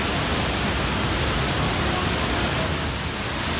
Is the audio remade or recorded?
recorded